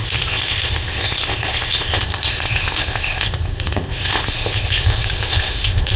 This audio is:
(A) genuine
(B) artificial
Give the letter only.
B